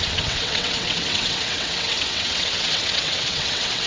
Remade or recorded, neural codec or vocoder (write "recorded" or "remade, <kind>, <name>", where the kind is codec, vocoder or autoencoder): remade, vocoder, WaveNeXt